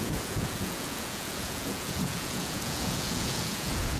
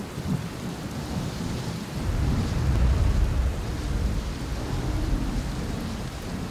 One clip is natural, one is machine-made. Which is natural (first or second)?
second